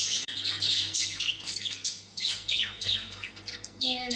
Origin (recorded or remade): remade